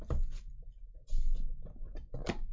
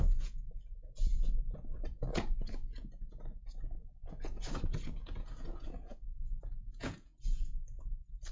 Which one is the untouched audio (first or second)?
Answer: first